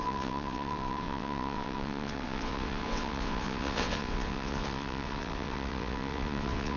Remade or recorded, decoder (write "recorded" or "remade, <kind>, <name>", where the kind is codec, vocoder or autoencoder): remade, vocoder, WaveNeXt